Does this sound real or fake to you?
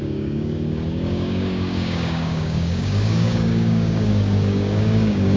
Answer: fake